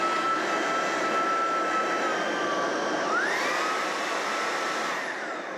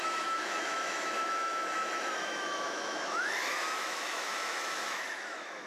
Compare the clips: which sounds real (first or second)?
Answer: first